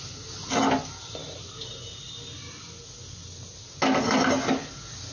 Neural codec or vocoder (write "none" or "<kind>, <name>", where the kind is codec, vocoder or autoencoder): none